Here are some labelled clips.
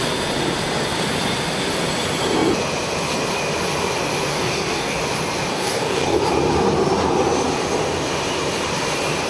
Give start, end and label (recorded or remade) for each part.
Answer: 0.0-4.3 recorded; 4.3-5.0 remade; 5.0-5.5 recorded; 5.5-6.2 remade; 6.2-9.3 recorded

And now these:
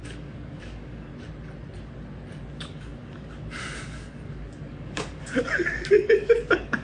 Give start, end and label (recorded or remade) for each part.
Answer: 0.0-1.1 remade; 1.1-2.5 recorded; 2.5-6.8 remade

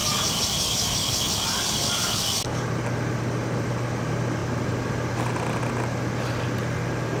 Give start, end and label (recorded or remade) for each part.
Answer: 0.0-2.6 remade; 2.6-7.2 recorded

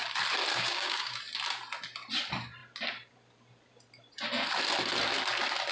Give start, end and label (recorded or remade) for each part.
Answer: 0.0-0.5 recorded; 0.5-1.2 remade; 1.2-5.7 recorded

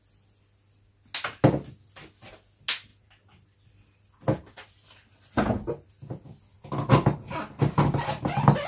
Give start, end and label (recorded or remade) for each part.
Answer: 0.0-8.7 recorded

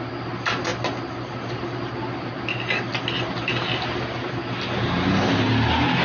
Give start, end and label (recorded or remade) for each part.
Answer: 0.0-6.0 recorded

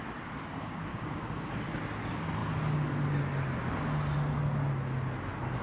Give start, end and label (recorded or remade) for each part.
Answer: 0.0-0.9 recorded; 0.9-1.5 remade; 1.5-5.6 recorded